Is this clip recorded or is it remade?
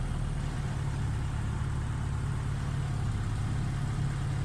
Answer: recorded